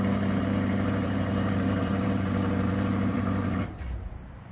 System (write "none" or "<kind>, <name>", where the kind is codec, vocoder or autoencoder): vocoder, BigVGAN v2